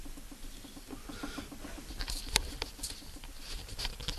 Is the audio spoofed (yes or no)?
yes